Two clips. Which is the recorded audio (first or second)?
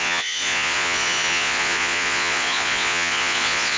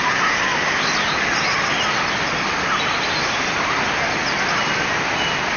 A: second